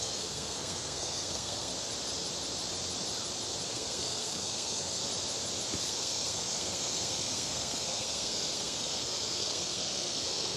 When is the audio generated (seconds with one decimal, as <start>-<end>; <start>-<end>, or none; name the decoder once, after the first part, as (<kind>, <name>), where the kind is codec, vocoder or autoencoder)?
0.0-1.7 (codec, SNAC); 3.7-5.0; 5.8-10.6